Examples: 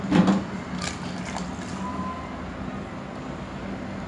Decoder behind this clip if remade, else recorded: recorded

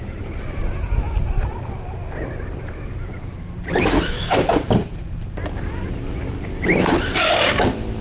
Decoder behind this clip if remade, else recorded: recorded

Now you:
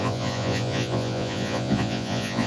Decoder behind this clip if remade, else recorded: remade, vocoder, Vocos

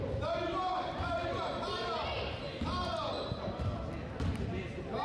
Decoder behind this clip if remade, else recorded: recorded